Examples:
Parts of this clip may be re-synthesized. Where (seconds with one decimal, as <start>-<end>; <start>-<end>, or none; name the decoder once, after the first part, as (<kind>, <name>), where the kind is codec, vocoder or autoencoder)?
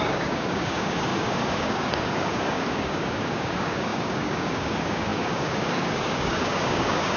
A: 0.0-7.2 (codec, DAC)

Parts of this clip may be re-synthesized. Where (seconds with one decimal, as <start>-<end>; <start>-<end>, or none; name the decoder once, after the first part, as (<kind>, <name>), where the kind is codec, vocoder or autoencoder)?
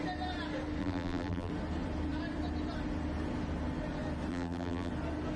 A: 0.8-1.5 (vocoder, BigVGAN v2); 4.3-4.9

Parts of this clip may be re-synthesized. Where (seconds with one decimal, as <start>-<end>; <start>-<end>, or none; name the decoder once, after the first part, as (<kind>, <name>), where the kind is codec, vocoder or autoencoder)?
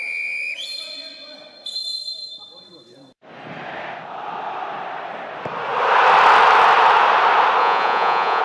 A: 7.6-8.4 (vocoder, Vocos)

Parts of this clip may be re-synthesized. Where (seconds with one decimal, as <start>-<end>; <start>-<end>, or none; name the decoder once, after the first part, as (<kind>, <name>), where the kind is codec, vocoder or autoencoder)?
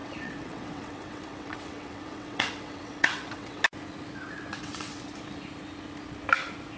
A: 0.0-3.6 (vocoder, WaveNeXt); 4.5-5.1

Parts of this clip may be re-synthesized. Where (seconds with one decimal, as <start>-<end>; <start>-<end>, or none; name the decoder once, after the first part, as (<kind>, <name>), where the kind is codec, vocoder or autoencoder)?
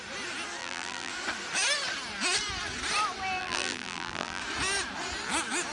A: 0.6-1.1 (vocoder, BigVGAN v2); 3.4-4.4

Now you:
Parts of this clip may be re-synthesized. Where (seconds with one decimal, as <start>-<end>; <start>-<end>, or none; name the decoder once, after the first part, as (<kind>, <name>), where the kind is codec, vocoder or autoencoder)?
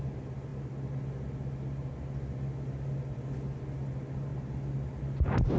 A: none